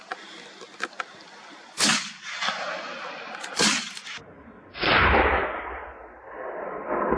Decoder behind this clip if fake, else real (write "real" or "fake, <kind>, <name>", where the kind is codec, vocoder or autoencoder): real